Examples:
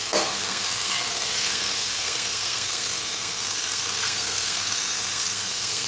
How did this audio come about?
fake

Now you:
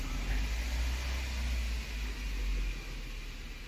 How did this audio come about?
real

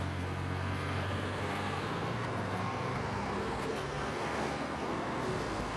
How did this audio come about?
fake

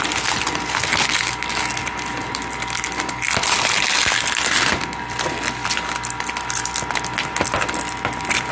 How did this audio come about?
real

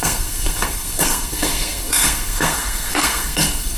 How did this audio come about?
fake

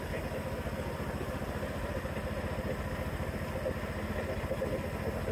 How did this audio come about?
real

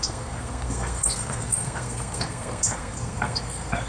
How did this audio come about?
fake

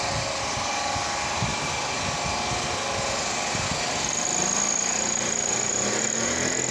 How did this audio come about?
real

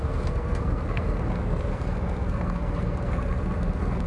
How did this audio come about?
fake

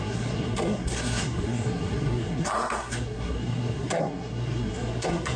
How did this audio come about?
fake